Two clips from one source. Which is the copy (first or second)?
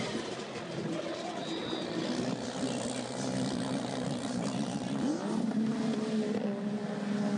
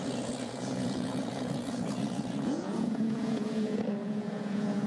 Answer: second